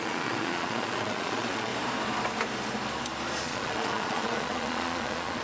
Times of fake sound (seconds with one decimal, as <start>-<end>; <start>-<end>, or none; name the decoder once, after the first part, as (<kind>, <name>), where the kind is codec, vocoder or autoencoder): 0.0-1.7 (vocoder, Vocos); 3.4-5.4